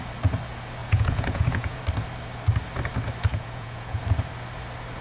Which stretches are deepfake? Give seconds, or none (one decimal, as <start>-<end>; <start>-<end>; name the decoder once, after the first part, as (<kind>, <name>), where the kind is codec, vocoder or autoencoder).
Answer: 0.8-1.8 (vocoder, Vocos); 3.3-4.0